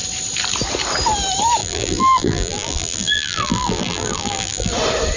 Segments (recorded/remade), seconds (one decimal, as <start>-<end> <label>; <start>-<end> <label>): 0.0-1.6 recorded; 1.6-4.7 remade; 4.7-5.2 recorded